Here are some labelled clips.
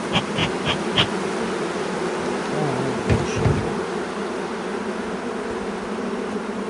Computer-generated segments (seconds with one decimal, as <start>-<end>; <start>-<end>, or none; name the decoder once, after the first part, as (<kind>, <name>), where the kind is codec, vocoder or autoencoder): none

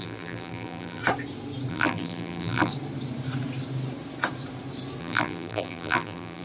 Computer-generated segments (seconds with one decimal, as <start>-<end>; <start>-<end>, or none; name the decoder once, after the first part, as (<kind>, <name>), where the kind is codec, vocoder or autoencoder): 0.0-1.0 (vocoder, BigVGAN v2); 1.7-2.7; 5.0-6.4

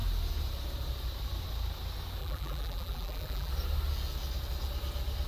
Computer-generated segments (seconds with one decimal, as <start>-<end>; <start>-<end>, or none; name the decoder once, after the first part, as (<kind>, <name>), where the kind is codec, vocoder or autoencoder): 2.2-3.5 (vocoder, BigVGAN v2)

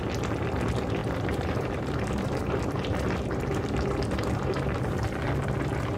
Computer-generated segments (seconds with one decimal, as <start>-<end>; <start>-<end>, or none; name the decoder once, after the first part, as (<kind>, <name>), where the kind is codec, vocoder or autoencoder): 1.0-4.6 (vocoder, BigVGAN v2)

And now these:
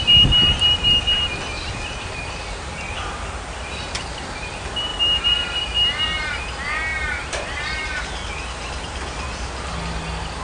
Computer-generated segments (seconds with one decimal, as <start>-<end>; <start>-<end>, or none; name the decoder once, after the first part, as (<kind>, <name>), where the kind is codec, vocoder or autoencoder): 4.9-6.4 (vocoder, BigVGAN v2); 6.9-8.0